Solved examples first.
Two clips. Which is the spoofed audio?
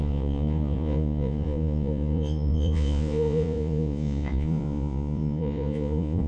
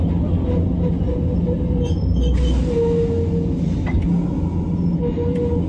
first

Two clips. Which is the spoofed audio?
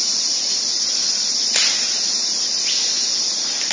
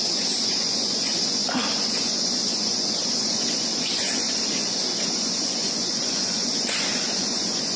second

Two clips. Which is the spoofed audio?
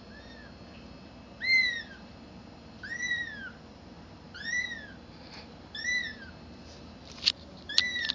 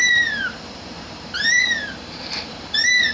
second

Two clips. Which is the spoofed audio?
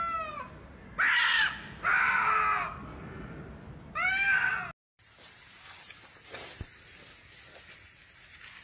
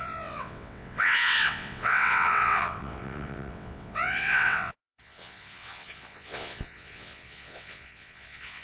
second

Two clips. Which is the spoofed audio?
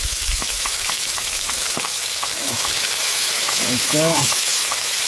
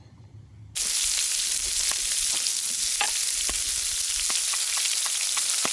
first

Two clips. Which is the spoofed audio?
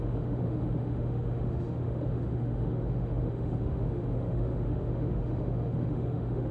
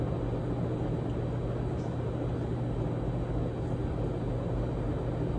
first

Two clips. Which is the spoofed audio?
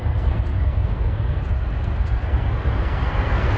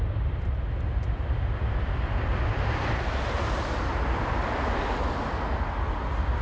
first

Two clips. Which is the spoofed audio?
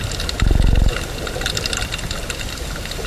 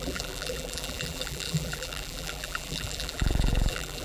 second